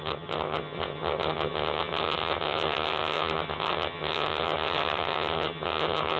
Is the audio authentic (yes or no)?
no